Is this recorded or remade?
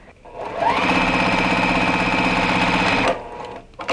recorded